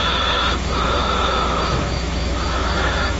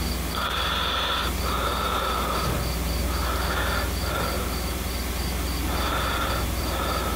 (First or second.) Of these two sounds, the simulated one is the first